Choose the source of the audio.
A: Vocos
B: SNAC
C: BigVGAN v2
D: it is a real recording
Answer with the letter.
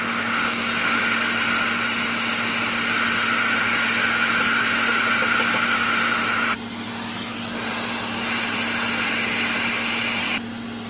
D